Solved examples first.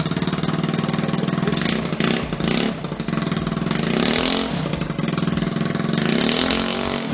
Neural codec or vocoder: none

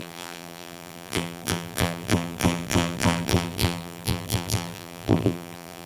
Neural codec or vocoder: vocoder, BigVGAN v2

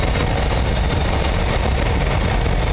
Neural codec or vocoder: none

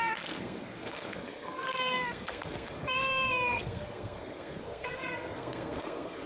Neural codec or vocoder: codec, SNAC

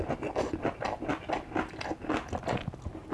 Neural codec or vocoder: none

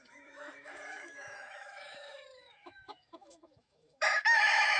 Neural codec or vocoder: autoencoder, DAC-VAE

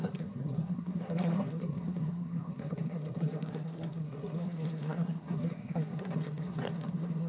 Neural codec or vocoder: codec, SNAC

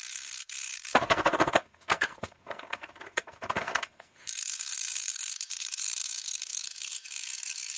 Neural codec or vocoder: codec, SNAC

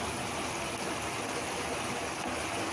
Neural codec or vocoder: none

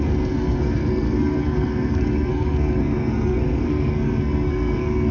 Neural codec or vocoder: codec, SNAC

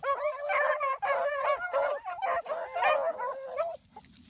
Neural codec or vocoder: none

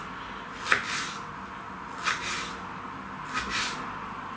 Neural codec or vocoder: none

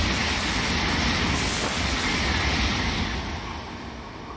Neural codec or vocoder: none